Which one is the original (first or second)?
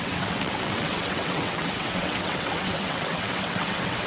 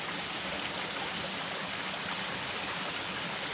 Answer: second